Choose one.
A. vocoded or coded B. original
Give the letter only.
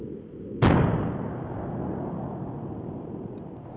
B